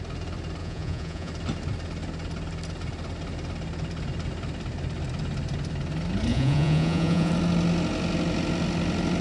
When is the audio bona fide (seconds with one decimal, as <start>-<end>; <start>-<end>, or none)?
0.0-0.6; 1.3-6.3; 7.3-9.2